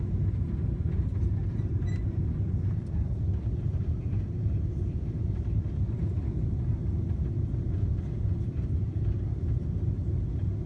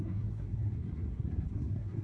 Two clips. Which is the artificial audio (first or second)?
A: second